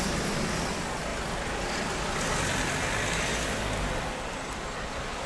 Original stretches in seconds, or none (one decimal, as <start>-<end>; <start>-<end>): 0.0-5.3